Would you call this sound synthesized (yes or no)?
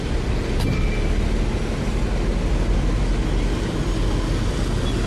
no